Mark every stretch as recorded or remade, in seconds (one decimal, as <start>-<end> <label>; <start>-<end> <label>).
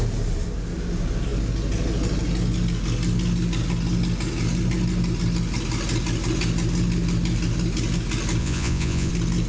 0.0-8.4 recorded; 8.4-9.1 remade; 9.1-9.5 recorded